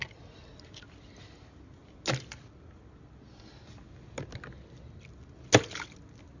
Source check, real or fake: real